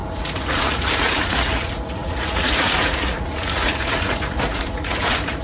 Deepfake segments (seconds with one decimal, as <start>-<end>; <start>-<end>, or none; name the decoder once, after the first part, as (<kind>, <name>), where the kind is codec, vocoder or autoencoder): 0.0-5.4 (vocoder, Vocos)